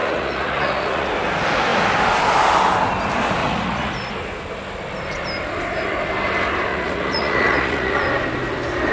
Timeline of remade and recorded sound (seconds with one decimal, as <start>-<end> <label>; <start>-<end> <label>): 0.0-1.1 remade; 1.1-3.4 recorded; 3.4-3.9 remade; 3.9-6.7 recorded; 6.7-8.0 remade; 8.0-8.9 recorded